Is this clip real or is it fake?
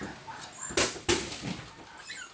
real